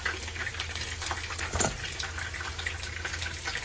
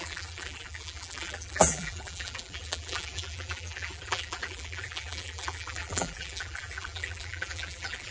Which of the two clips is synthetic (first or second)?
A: second